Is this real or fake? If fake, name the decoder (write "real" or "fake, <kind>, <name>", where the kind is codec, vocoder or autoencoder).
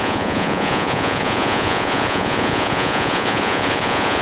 fake, vocoder, Vocos